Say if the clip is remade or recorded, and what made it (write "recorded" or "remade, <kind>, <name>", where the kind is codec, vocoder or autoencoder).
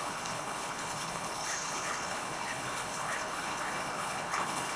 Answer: remade, codec, HILCodec